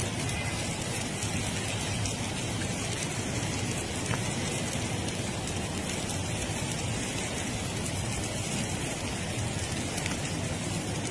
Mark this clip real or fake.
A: real